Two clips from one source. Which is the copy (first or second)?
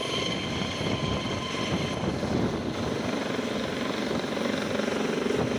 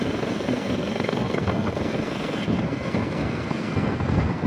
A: second